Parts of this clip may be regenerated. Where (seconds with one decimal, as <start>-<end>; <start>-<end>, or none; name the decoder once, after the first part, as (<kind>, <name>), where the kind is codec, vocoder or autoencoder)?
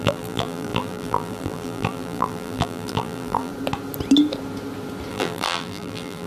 0.0-3.5 (vocoder, BigVGAN v2); 5.1-6.3